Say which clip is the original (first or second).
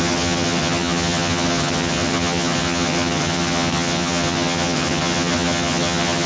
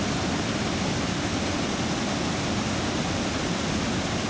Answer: second